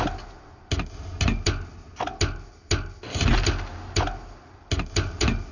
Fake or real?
real